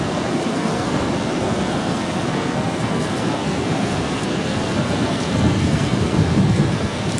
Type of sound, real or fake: fake